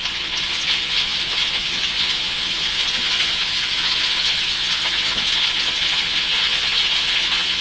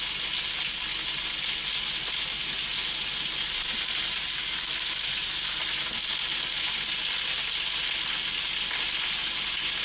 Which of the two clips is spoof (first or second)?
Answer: first